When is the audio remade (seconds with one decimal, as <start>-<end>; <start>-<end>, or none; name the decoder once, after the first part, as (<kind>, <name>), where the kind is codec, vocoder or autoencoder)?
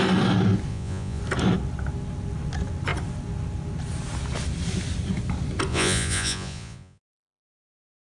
0.7-1.2 (vocoder, Vocos); 5.7-7.4